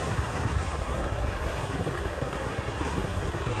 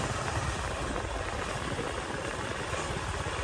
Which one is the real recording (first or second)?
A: second